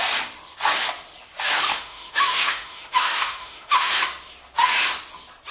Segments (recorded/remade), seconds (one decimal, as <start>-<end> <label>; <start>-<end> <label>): 0.0-1.7 recorded; 1.7-3.9 remade; 3.9-5.5 recorded